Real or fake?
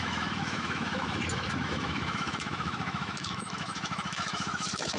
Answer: fake